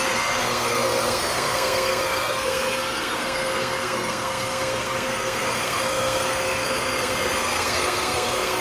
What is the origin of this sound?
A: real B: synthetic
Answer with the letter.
B